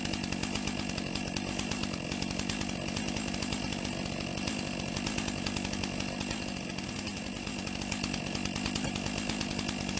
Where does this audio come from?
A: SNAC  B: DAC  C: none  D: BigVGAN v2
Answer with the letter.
C